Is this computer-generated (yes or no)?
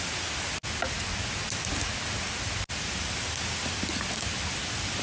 no